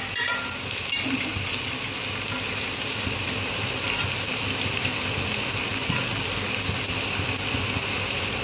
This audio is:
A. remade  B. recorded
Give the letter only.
B